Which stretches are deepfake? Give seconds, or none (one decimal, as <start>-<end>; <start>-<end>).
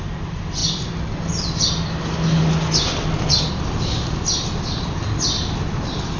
none